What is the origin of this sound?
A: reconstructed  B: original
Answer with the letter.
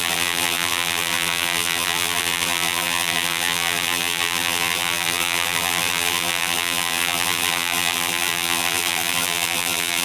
A